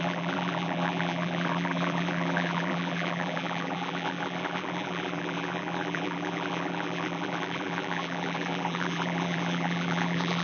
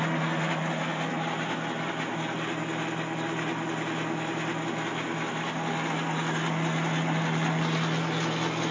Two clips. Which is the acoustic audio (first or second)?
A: second